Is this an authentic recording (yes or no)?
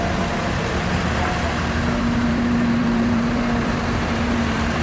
no